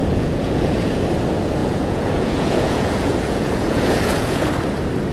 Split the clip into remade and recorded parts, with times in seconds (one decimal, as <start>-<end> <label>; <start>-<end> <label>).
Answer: 0.0-1.0 remade; 1.0-1.6 recorded; 1.6-4.5 remade; 4.5-5.1 recorded